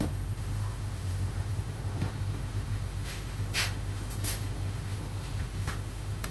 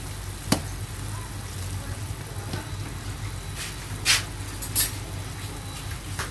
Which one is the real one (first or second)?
second